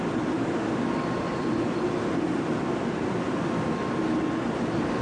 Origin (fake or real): real